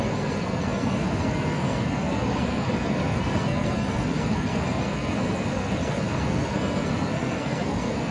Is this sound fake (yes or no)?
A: yes